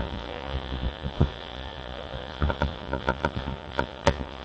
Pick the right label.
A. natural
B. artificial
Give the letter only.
B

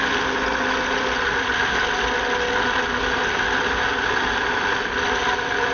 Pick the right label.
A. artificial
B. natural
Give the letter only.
B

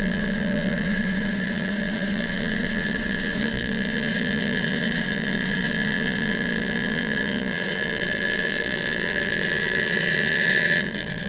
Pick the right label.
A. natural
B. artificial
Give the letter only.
B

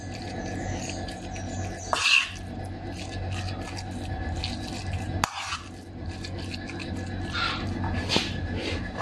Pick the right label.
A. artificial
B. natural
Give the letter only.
B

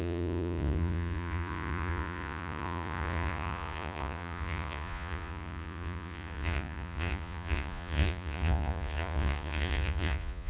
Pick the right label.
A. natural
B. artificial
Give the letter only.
B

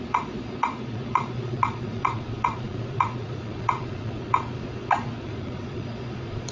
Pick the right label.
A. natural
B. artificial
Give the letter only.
B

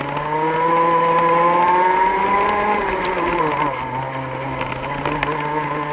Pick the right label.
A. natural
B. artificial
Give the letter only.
A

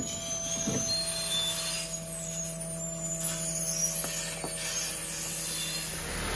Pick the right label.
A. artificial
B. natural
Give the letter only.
B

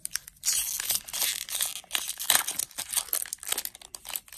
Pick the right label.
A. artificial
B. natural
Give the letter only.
B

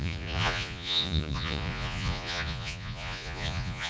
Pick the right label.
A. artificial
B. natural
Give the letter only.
A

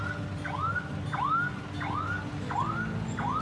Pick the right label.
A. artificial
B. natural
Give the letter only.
B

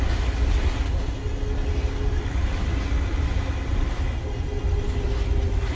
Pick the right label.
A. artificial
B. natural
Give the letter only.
B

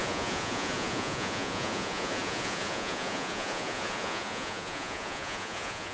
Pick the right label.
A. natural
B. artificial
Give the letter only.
B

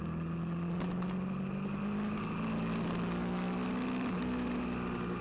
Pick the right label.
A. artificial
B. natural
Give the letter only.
B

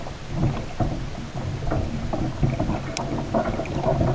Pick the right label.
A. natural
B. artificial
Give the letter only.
A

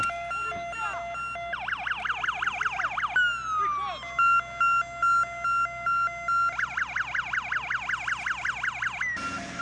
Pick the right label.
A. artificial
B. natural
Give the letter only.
B